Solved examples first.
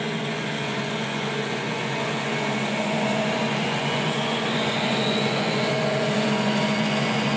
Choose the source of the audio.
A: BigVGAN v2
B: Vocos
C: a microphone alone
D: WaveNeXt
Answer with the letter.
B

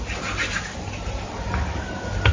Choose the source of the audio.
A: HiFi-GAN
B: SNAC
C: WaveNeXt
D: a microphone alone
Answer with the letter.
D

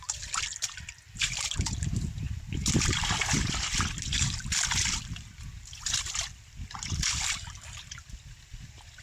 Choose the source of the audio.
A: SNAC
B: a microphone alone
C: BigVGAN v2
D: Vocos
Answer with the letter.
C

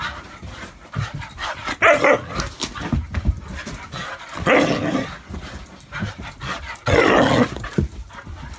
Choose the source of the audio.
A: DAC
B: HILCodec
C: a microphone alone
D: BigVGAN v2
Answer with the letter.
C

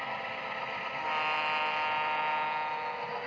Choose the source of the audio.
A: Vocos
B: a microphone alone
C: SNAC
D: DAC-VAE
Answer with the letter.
B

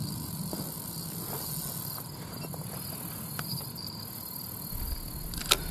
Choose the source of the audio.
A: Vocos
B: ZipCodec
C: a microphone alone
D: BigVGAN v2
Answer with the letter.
C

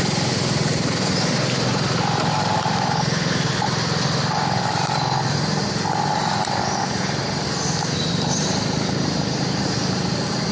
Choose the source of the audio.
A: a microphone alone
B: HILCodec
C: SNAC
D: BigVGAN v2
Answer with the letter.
D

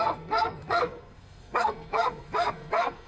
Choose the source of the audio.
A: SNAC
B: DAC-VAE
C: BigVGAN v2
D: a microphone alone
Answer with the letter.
A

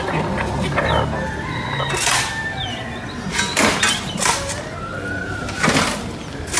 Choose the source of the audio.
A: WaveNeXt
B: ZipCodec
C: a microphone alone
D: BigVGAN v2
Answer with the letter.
C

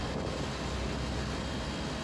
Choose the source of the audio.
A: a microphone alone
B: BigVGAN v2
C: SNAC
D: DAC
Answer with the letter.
A